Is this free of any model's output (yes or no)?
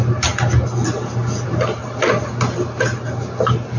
yes